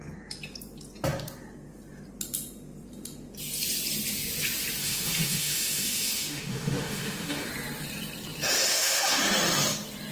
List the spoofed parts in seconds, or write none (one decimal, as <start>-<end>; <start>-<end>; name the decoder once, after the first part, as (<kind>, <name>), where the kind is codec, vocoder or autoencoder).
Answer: 4.8-7.5 (autoencoder, DAC-VAE); 8.7-9.2